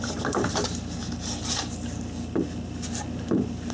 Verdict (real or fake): real